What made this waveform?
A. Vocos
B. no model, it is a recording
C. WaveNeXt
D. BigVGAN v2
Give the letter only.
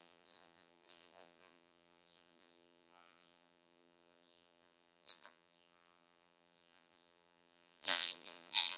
D